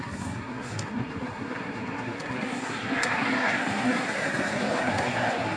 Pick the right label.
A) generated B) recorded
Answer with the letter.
A